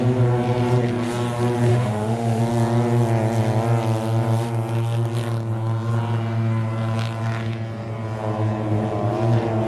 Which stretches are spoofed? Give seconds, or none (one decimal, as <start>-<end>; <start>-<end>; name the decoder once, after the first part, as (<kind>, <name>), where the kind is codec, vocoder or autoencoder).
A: 1.7-2.4 (autoencoder, DAC-VAE)